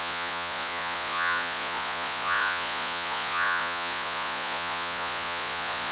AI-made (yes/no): yes